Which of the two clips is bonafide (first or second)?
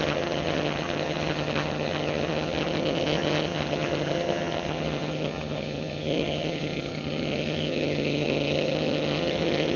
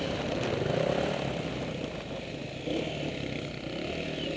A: second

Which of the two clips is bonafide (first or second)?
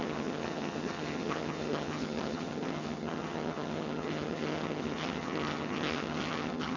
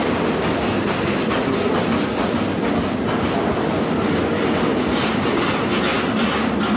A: second